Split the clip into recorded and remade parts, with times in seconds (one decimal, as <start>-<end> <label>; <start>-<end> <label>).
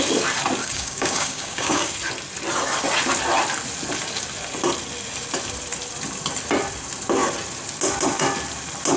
0.0-0.6 recorded; 0.6-1.9 remade; 1.9-9.0 recorded